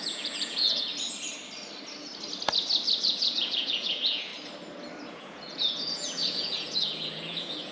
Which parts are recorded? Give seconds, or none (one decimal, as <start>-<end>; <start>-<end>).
0.9-3.0; 4.3-5.1